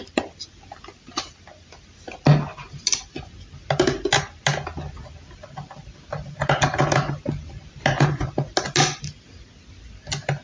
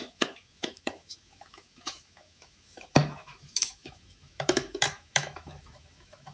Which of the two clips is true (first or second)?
first